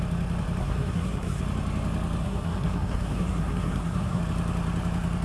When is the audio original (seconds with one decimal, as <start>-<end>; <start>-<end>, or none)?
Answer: 0.0-0.6; 1.4-2.2; 4.2-5.2